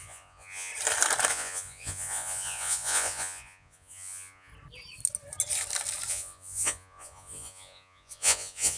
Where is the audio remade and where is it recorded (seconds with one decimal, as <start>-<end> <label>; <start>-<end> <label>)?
0.0-0.7 remade; 0.7-1.3 recorded; 1.3-4.5 remade; 4.5-6.1 recorded; 6.1-8.8 remade